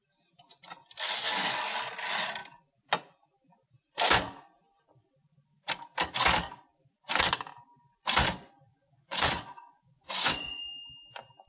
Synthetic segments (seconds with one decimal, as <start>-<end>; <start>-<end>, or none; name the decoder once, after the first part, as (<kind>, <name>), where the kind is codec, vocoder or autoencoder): 8.7-10.6 (vocoder, Vocos)